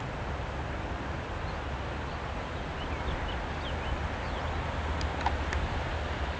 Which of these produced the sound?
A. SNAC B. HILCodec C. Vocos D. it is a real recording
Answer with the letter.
D